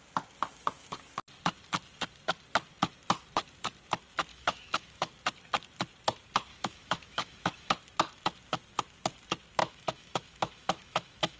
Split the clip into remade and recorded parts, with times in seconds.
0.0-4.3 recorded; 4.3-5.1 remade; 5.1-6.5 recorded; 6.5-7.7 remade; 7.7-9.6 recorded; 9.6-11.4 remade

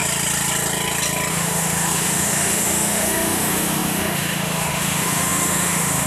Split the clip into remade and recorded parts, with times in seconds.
0.0-1.3 recorded; 1.3-6.1 remade

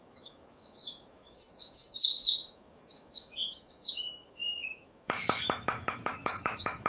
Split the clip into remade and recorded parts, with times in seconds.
0.0-6.9 remade

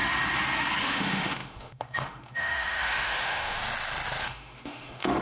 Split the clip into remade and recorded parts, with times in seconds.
0.0-0.8 recorded; 0.8-3.6 remade; 3.6-4.2 recorded; 4.2-5.2 remade

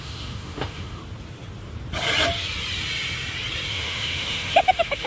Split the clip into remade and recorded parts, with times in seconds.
0.0-1.0 remade; 1.0-3.7 recorded; 3.7-5.1 remade

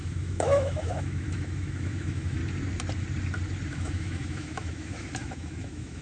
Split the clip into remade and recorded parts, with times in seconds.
0.0-2.4 remade; 2.4-3.7 recorded; 3.7-6.0 remade

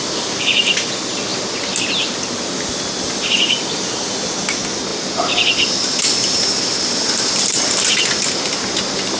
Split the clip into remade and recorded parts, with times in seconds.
0.0-9.2 recorded

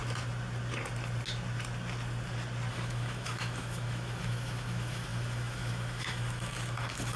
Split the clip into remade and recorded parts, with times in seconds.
0.0-2.7 recorded; 2.7-7.2 remade